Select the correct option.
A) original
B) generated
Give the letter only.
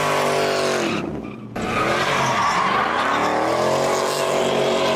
A